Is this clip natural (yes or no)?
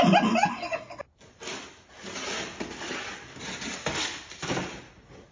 yes